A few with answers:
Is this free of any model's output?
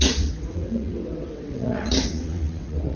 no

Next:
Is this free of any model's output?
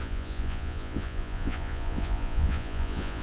no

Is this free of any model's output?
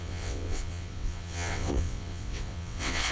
no